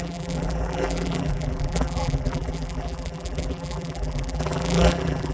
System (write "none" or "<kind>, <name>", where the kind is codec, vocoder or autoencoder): vocoder, BigVGAN v2